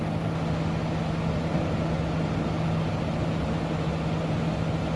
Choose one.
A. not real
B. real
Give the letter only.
B